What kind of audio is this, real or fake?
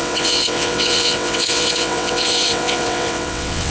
fake